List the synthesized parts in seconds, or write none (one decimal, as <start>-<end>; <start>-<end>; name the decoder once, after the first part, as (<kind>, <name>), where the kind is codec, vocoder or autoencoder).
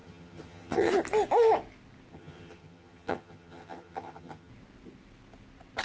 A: 0.0-0.9 (vocoder, HiFi-GAN); 2.1-4.5